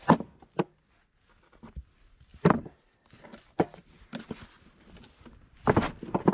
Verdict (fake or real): real